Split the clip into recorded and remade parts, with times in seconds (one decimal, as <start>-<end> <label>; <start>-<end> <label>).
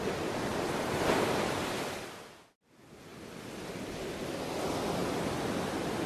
0.0-0.5 recorded; 0.5-2.0 remade; 2.0-6.1 recorded